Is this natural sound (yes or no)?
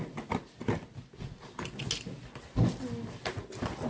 yes